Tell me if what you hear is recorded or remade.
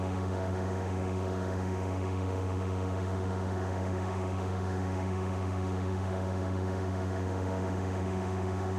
remade